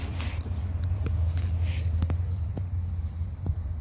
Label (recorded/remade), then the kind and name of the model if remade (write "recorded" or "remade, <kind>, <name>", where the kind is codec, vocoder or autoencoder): recorded